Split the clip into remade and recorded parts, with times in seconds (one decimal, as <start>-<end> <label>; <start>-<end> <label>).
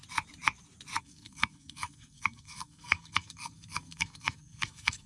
0.0-1.0 recorded; 1.0-5.1 remade